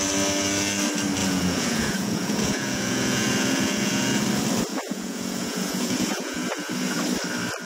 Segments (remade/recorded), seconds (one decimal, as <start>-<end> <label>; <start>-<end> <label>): 0.0-1.2 recorded; 1.2-4.3 remade; 4.3-4.7 recorded; 4.7-7.0 remade; 7.0-7.6 recorded